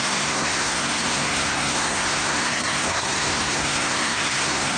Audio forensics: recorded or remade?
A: remade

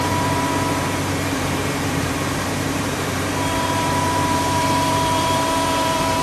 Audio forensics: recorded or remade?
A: remade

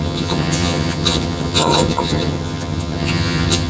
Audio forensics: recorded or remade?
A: remade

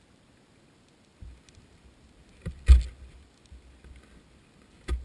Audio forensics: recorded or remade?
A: recorded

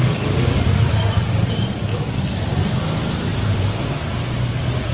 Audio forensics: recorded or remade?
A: recorded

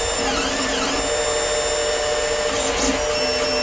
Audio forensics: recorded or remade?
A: recorded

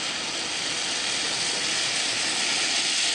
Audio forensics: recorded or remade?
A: recorded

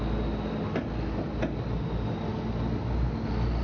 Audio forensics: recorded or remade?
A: recorded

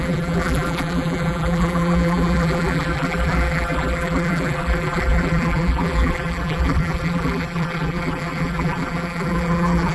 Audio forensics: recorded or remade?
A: remade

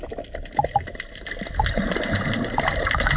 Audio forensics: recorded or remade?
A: recorded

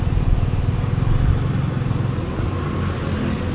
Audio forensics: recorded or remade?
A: recorded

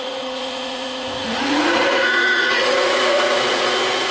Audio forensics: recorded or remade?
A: remade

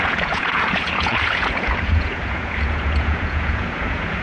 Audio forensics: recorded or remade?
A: remade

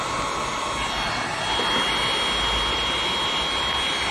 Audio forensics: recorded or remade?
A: recorded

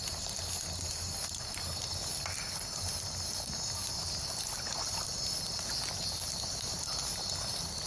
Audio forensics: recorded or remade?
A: recorded